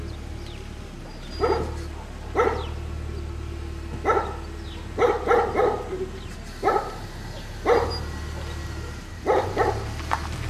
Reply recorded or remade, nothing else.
recorded